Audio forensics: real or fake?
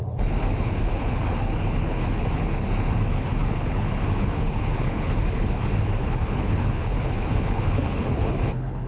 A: fake